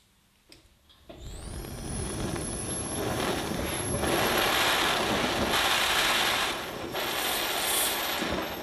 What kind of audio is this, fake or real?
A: real